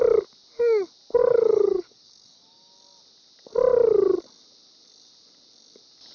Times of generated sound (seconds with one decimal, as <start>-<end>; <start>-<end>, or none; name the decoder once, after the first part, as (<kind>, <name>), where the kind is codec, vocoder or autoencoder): 1.2-2.7 (codec, DAC)